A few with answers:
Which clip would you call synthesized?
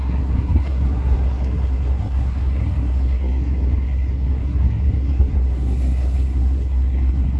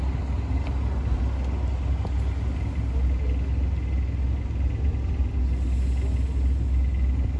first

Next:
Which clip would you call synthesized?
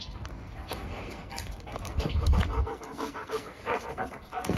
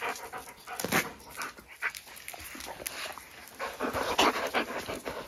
first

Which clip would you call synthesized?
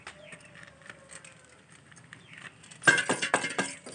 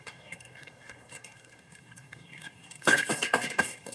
second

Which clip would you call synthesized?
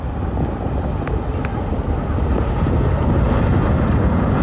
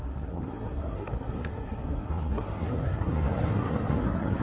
second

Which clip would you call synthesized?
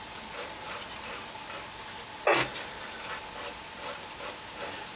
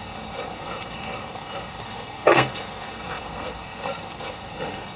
second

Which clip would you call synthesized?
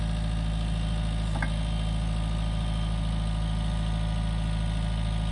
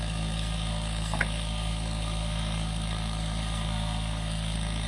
second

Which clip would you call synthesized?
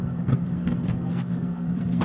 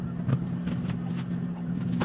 first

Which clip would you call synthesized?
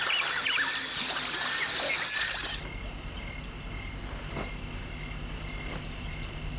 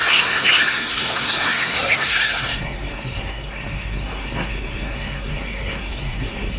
second